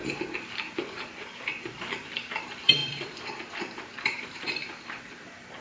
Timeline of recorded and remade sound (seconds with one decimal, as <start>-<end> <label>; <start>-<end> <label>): 0.0-0.6 recorded; 0.6-4.6 remade; 4.6-5.6 recorded